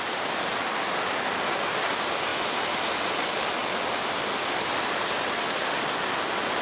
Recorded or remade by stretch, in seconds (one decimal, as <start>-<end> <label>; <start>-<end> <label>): 0.0-6.6 recorded

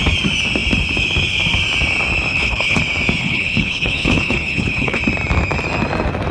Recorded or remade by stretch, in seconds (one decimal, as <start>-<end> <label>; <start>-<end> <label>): 0.0-2.3 recorded; 2.3-2.8 remade; 2.8-3.2 recorded; 3.2-5.0 remade; 5.0-6.3 recorded

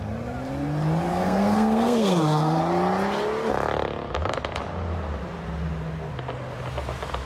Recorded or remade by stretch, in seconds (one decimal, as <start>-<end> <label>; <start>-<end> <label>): 0.0-1.1 recorded; 1.1-2.6 remade; 2.6-7.3 recorded

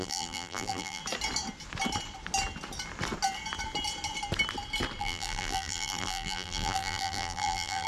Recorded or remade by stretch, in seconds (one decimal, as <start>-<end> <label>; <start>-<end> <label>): 0.0-1.0 remade; 1.0-5.0 recorded; 5.0-7.9 remade

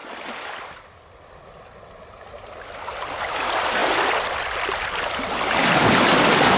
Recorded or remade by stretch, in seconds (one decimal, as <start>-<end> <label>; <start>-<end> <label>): 0.0-0.8 remade; 0.8-3.8 recorded; 3.8-5.3 remade; 5.3-6.6 recorded

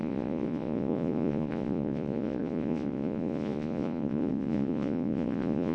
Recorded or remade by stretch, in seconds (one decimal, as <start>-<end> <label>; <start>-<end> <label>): 0.0-5.7 remade

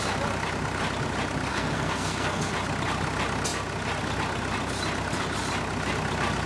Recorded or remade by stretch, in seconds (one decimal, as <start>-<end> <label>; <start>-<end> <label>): 0.0-1.5 recorded; 1.5-2.5 remade; 2.5-6.5 recorded